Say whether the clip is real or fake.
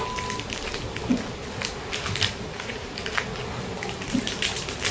real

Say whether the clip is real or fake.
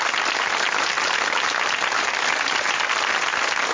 real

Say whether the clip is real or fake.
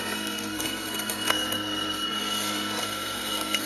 fake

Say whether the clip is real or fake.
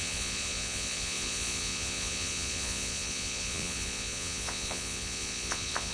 fake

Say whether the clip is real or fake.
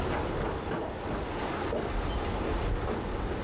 real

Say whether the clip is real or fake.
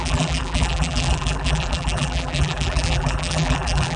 fake